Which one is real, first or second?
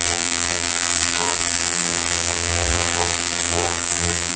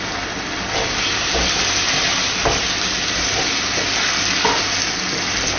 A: second